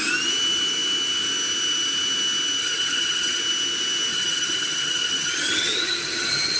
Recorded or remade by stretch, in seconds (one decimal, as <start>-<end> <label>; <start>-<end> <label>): 0.0-2.6 recorded; 2.6-3.4 remade; 3.4-4.1 recorded; 4.1-6.6 remade